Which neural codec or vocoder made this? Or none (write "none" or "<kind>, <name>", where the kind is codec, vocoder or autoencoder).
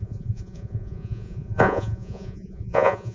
vocoder, Vocos